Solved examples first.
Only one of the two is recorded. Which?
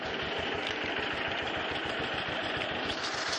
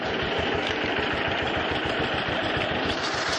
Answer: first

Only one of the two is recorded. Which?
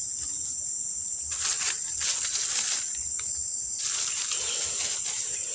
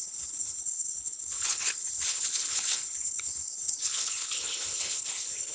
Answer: first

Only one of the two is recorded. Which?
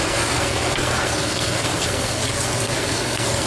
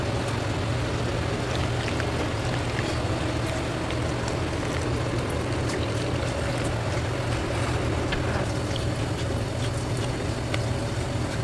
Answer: second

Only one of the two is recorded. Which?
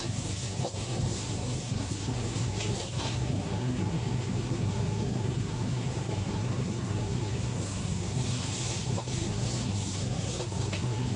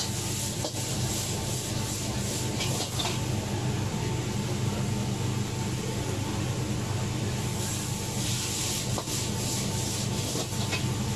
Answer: second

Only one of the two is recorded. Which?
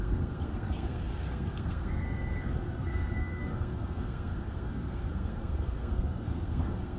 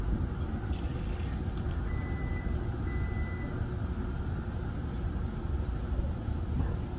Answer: second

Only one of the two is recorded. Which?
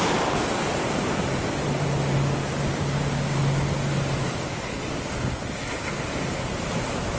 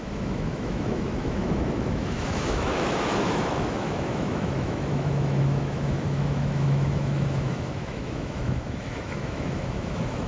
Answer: first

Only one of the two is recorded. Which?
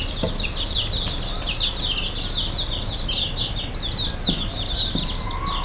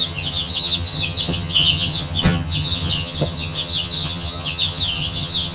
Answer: first